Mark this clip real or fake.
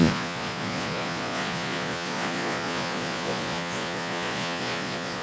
fake